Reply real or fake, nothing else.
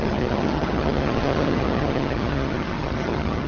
fake